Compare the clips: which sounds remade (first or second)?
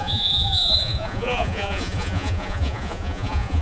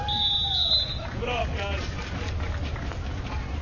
first